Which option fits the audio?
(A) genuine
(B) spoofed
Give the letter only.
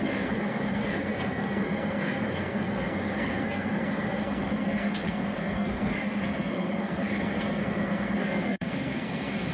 B